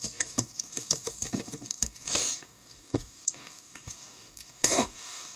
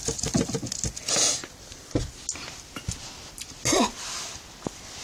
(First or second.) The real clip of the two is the second